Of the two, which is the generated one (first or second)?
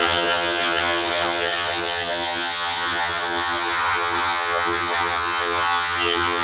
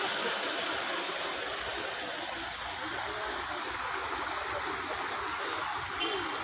first